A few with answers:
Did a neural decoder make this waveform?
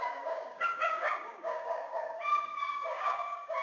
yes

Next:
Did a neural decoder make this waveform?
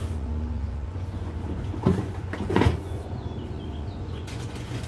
yes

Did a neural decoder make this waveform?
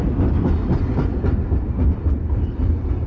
no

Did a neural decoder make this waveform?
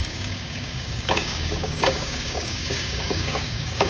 yes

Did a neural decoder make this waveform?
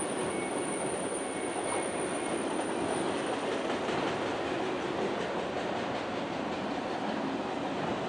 no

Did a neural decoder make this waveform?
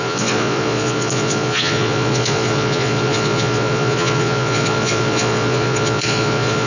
yes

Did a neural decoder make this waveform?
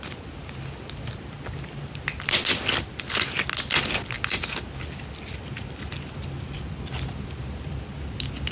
no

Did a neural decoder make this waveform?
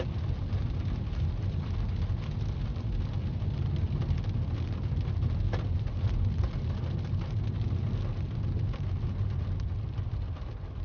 no